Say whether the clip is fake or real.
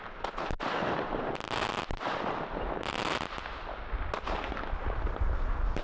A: real